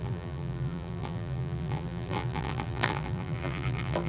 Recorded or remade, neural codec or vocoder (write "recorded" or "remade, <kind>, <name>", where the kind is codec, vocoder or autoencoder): remade, vocoder, BigVGAN v2